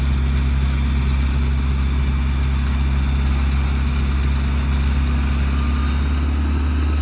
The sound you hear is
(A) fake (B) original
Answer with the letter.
B